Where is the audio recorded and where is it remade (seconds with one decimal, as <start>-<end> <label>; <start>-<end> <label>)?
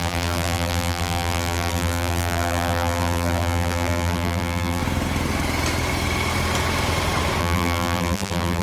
0.0-4.8 remade; 4.8-7.4 recorded; 7.4-8.6 remade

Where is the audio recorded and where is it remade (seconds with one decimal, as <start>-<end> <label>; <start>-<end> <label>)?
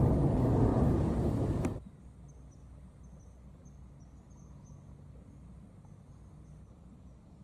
0.0-0.7 recorded; 0.7-2.0 remade; 2.0-7.4 recorded